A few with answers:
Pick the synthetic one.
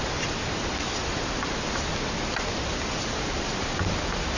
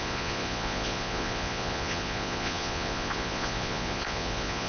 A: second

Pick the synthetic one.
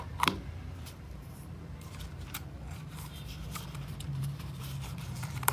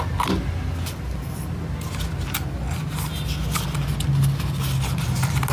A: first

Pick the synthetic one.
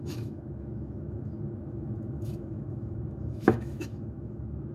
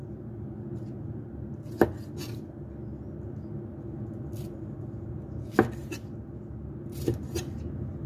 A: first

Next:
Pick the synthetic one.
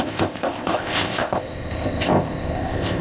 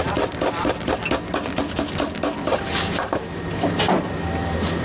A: first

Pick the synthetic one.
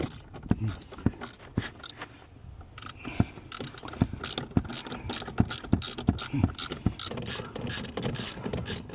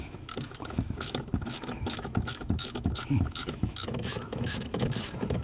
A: second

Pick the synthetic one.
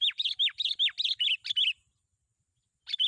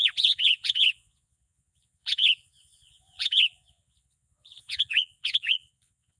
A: second